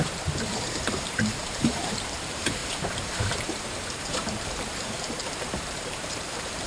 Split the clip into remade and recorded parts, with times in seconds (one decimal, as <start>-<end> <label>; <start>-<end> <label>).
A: 0.0-6.7 remade